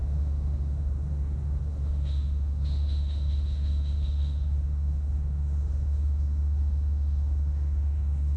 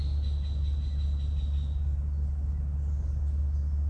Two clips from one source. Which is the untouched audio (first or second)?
second